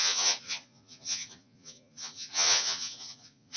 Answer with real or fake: fake